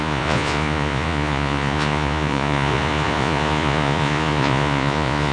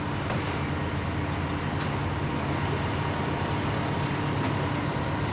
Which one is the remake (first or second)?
first